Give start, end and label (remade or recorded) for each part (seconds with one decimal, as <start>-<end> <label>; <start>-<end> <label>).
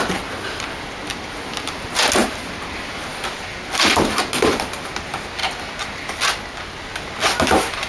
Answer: 0.0-7.9 recorded